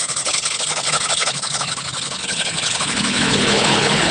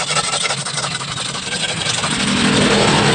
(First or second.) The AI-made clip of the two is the first